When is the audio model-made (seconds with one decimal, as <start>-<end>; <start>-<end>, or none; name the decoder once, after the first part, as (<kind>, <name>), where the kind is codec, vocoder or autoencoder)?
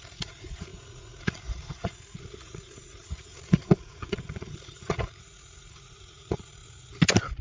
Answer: 0.0-6.6 (vocoder, Vocos)